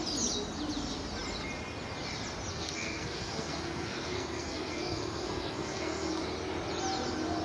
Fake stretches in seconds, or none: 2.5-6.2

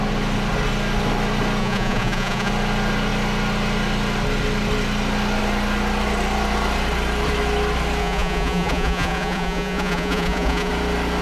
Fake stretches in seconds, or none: 1.6-2.5; 8.0-10.7

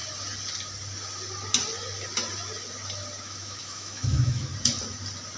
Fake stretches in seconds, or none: 3.2-4.5

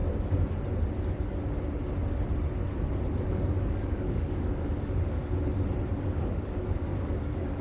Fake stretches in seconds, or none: 3.3-5.2; 5.9-7.6

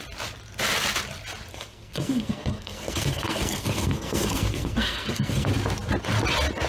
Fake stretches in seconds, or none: 1.5-5.5

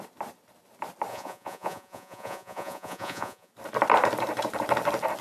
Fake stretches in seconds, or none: 1.1-3.5

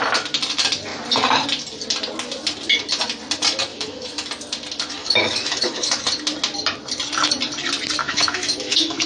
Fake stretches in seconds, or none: 3.7-4.3; 5.0-6.0; 8.0-9.1

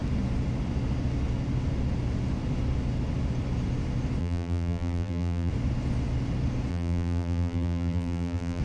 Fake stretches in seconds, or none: 4.2-5.5; 6.7-8.6